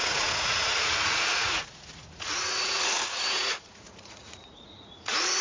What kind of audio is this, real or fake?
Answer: fake